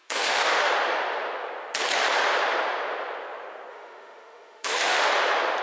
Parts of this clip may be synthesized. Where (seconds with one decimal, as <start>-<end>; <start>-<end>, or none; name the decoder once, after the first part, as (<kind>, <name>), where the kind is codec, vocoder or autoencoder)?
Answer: 0.0-0.7 (autoencoder, DAC-VAE); 3.7-5.1